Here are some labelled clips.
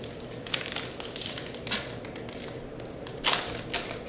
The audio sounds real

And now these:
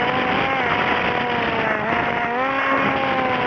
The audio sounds real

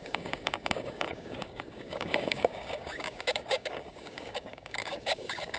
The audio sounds fake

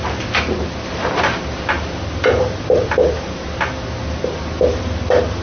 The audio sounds real